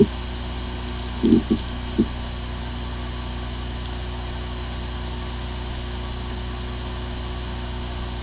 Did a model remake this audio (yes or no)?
no